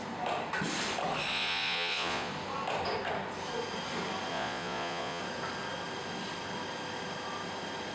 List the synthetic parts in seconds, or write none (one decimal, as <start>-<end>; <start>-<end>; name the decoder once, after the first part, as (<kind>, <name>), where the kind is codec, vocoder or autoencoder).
1.3-2.3 (vocoder, Vocos); 4.3-5.2